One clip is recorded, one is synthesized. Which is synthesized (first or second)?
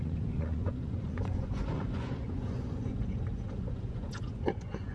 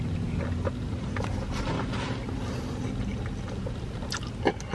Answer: first